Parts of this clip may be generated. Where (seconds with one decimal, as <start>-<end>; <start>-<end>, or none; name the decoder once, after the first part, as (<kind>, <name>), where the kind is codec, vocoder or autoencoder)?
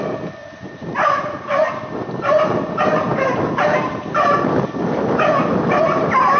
0.4-1.7 (vocoder, Vocos)